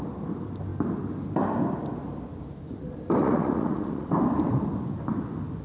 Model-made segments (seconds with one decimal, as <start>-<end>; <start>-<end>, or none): 3.2-4.1

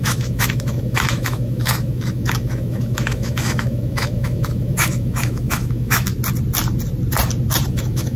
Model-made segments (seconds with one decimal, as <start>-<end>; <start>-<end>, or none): 0.0-6.1; 7.7-8.2